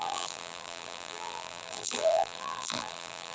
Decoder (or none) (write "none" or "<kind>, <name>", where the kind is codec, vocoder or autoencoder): vocoder, BigVGAN v2